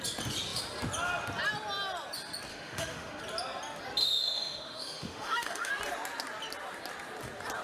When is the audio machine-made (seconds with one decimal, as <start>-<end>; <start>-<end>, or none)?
2.5-3.2; 4.0-5.7